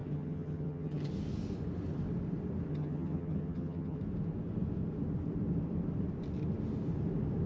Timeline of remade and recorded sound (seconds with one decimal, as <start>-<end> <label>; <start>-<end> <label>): 0.0-1.1 remade; 1.1-2.7 recorded; 2.7-4.0 remade; 4.0-7.5 recorded